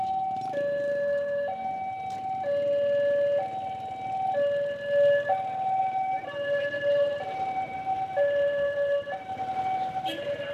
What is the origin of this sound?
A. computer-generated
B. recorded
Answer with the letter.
B